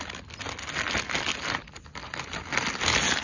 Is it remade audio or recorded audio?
recorded